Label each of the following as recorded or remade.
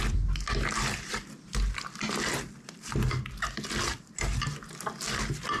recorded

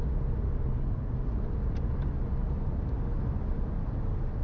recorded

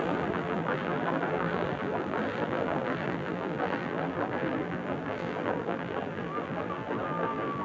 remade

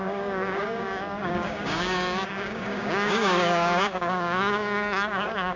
remade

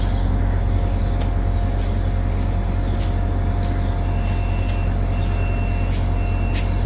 recorded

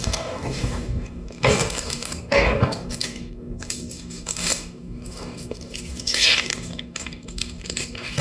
remade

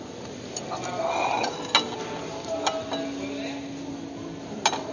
recorded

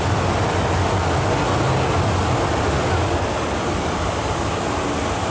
recorded